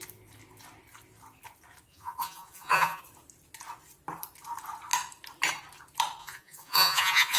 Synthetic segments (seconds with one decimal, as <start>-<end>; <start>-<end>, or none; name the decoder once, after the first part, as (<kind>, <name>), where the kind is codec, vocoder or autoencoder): 1.9-3.0 (vocoder, Vocos); 6.2-7.4